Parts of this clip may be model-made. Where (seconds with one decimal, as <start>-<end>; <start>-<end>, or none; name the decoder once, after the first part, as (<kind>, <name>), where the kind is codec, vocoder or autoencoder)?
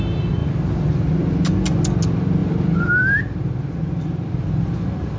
0.4-1.1 (vocoder, BigVGAN v2); 2.4-5.2